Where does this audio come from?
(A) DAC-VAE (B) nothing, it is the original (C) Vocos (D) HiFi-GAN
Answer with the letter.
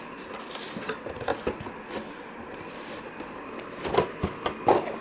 B